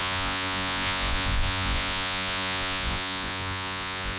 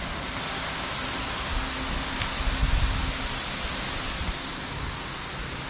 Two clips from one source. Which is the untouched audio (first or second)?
second